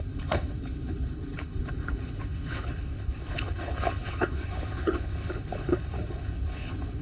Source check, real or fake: fake